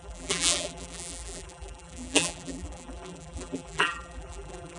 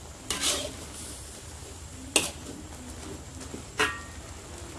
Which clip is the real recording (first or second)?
second